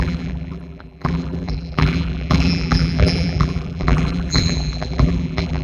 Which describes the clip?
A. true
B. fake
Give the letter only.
B